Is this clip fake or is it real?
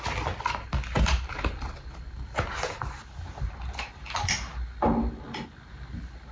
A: real